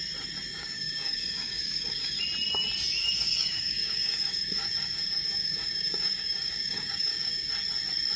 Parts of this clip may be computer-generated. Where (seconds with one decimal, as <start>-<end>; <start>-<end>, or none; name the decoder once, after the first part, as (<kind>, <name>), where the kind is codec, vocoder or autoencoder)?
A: 0.5-2.2 (codec, DAC); 3.0-7.5